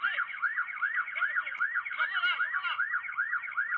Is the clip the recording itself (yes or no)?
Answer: yes